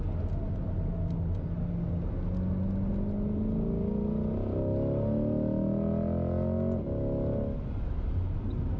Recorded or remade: recorded